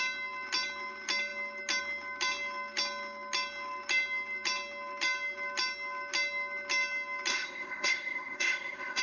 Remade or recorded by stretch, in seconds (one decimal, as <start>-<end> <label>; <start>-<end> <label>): 0.0-7.3 recorded; 7.3-9.0 remade